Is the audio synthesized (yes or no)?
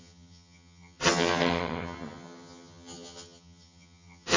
yes